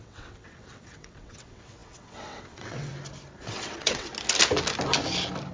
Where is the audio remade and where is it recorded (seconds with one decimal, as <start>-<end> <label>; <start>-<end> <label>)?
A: 0.0-2.9 remade; 2.9-3.4 recorded; 3.4-4.1 remade; 4.1-5.5 recorded